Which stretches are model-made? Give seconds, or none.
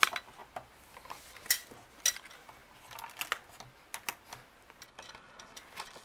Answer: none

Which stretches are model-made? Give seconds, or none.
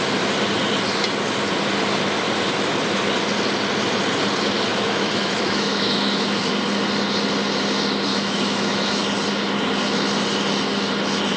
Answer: 4.7-6.5 (autoencoder, DAC-VAE); 8.1-9.0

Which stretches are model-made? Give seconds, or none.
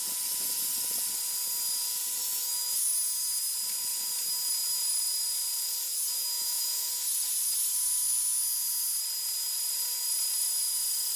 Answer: 2.2-2.8 (autoencoder, DAC-VAE); 6.2-6.9